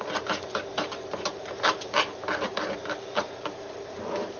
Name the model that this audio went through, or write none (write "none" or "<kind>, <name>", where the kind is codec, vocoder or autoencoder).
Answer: none